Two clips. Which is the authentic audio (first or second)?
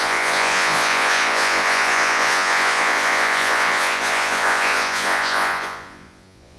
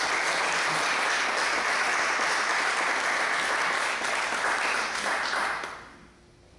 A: second